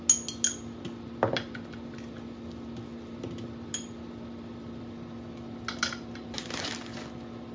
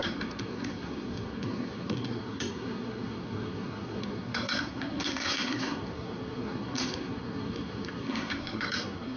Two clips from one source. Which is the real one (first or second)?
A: first